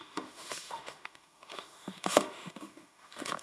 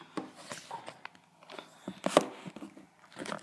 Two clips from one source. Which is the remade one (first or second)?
first